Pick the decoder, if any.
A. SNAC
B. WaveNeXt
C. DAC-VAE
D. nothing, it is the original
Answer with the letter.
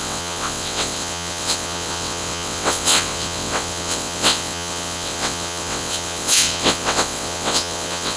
B